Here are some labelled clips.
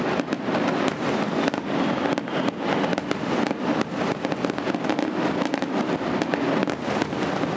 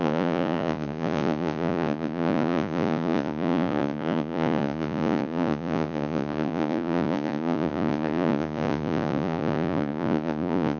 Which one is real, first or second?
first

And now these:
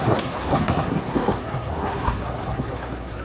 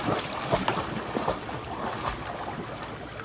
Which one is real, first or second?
second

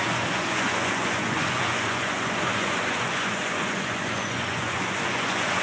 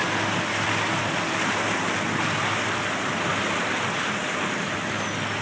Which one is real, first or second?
second